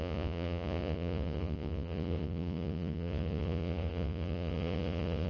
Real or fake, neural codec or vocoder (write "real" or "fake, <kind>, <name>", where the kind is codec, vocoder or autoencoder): fake, vocoder, Vocos